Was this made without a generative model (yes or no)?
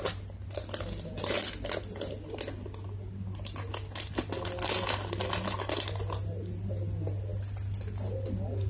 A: yes